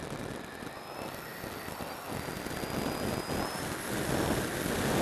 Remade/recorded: recorded